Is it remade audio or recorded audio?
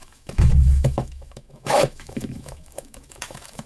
remade